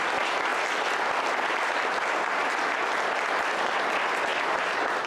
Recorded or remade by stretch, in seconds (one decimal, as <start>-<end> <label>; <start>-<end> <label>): 0.0-5.1 recorded